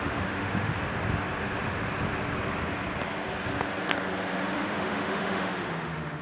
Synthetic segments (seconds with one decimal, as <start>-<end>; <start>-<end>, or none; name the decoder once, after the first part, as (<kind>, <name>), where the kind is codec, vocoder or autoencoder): 0.0-0.8 (autoencoder, DAC-VAE); 4.3-6.2